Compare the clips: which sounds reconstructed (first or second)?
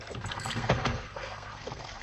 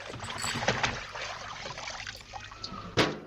first